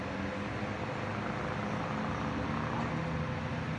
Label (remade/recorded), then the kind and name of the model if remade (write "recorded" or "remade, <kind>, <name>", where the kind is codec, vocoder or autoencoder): recorded